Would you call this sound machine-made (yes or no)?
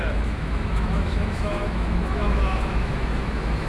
yes